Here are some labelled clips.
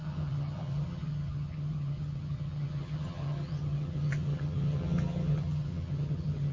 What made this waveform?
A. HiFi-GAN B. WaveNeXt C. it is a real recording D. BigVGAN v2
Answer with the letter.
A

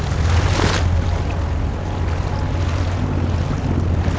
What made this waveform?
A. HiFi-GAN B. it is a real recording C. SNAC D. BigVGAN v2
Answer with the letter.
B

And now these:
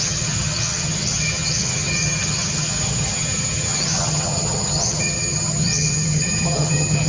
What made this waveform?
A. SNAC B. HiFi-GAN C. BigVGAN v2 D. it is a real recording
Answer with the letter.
B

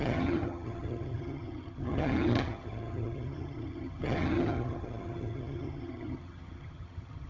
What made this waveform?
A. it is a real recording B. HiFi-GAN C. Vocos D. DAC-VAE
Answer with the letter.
B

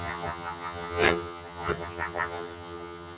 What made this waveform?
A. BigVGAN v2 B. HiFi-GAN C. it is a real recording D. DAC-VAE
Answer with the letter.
B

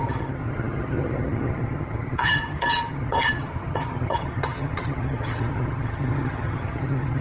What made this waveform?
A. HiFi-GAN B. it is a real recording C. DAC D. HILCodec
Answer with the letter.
A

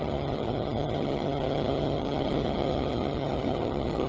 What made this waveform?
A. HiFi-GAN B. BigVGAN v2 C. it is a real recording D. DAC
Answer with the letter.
A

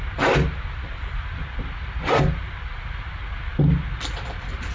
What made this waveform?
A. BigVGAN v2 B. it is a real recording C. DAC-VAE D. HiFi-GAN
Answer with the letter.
B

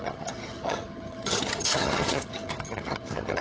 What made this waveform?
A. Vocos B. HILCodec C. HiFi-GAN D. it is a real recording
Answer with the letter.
C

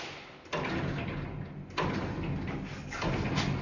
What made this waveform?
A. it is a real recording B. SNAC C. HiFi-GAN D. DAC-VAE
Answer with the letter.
A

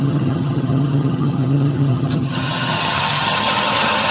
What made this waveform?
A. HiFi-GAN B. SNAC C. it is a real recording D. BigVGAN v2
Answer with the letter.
A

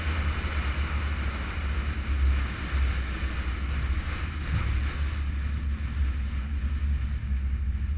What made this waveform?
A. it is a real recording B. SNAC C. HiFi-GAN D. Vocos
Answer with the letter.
A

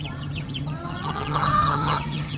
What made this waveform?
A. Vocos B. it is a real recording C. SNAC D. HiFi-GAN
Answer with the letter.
D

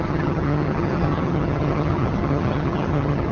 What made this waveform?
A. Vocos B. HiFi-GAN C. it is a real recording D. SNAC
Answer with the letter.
B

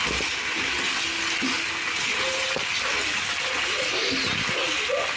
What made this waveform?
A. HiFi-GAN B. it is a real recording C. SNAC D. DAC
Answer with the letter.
B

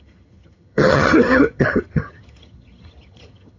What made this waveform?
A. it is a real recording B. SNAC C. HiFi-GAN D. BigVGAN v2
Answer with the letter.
C